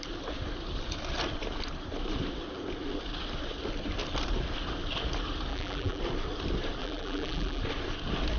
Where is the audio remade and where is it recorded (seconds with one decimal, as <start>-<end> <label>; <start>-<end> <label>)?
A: 0.0-5.5 recorded; 5.5-6.0 remade; 6.0-6.8 recorded; 6.8-7.6 remade; 7.6-8.4 recorded